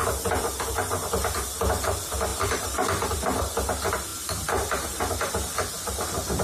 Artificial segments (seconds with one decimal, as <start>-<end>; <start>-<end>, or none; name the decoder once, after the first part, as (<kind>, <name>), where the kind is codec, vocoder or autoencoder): 0.0-1.1 (vocoder, BigVGAN v2); 2.3-3.4